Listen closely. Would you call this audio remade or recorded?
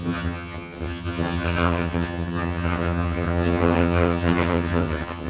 remade